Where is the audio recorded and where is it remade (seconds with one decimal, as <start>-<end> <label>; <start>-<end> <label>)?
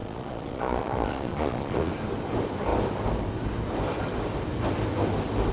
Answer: 0.0-1.9 remade; 1.9-5.5 recorded